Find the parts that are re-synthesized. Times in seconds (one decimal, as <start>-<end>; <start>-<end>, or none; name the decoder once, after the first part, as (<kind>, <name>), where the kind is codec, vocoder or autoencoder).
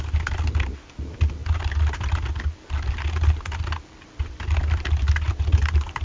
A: none